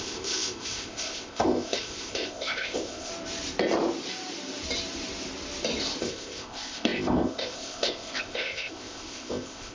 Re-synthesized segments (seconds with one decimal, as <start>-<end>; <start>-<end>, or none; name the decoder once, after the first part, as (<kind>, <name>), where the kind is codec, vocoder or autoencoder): 0.0-3.1 (codec, ZipCodec); 6.0-9.7